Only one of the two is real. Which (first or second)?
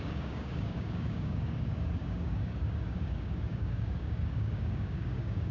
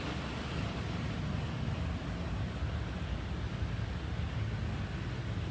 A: second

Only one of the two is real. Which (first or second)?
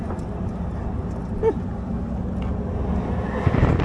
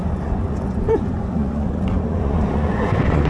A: first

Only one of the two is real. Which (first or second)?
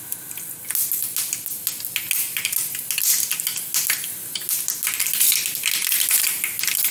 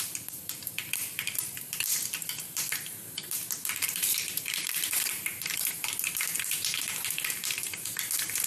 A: first